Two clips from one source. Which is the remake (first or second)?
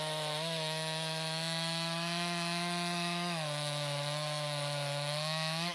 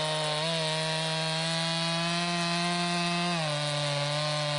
first